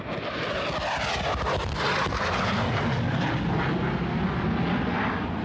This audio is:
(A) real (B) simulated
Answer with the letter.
A